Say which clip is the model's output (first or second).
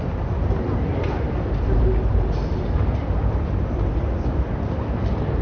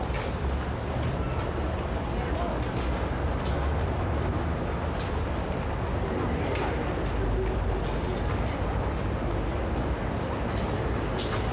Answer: first